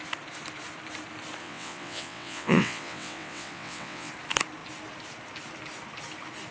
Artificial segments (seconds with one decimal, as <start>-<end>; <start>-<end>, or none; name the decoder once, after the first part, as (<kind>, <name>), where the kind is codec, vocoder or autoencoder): 1.4-4.1 (vocoder, WaveNeXt)